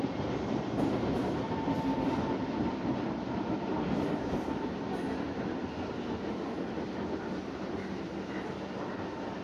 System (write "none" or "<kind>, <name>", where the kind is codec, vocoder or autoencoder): none